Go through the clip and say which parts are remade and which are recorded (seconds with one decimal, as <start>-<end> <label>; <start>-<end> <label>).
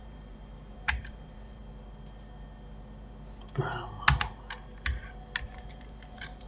0.0-1.6 remade; 1.6-5.5 recorded; 5.5-6.5 remade